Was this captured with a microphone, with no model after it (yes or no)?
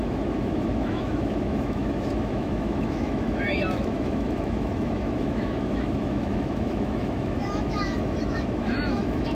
no